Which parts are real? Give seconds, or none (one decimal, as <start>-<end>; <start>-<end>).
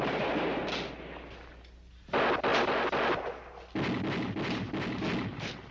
0.0-5.7